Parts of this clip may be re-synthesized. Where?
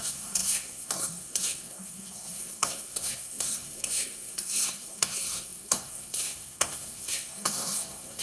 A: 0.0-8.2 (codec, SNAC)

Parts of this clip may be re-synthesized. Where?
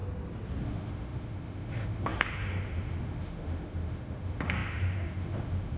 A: 0.6-5.8 (autoencoder, DAC-VAE)